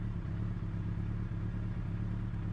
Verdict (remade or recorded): recorded